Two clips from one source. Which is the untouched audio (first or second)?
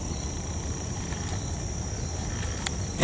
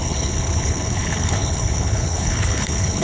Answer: first